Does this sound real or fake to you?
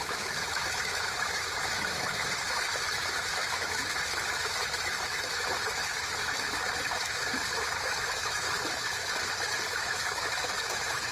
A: fake